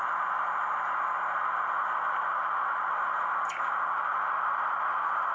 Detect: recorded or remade recorded